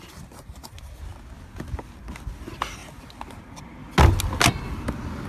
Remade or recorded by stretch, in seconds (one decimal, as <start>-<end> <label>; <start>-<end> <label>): 0.0-5.3 recorded